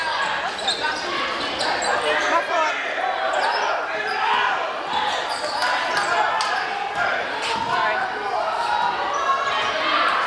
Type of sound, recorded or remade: recorded